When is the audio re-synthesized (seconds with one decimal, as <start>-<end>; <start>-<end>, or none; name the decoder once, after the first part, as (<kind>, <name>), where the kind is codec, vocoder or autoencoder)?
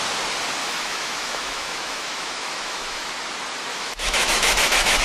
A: 0.6-3.1 (autoencoder, DAC-VAE); 3.7-5.0